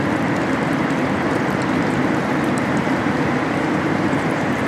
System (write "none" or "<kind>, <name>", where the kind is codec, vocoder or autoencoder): vocoder, BigVGAN v2